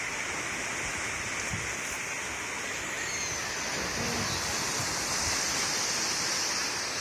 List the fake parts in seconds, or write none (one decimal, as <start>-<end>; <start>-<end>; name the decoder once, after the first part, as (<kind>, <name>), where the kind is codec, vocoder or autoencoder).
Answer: none